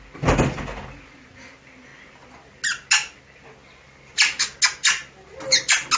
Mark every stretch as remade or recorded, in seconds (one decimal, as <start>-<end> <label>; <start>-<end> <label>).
0.0-6.0 recorded